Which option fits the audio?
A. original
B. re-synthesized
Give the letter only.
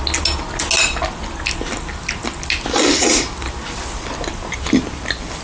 A